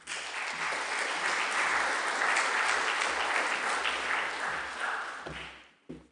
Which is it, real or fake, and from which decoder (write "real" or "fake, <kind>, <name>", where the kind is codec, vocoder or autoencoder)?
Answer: real